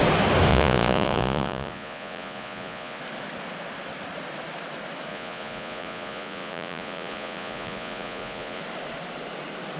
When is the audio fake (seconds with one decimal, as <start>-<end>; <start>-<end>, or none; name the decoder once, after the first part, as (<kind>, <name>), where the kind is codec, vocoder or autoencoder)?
0.5-3.0 (vocoder, Vocos); 5.1-8.6